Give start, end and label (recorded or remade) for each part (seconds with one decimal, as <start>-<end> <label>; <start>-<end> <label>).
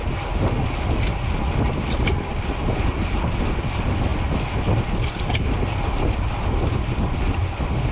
0.0-7.9 recorded